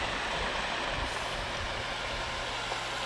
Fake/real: real